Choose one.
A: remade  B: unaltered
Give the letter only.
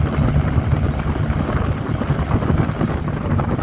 B